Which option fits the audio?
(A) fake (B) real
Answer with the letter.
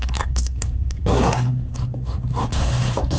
A